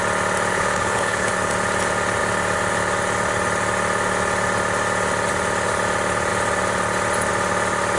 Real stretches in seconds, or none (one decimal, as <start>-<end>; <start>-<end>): 0.0-0.5; 1.3-8.0